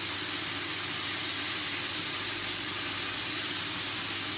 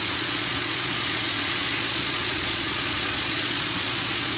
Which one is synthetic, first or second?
second